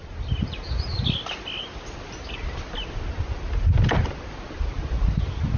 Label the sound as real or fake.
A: real